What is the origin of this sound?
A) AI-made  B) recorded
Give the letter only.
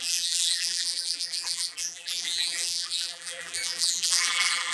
A